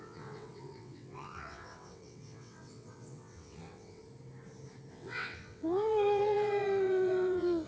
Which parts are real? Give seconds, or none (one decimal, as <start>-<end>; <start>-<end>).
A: 4.0-4.9